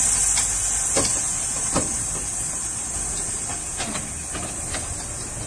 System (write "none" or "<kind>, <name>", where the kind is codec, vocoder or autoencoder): none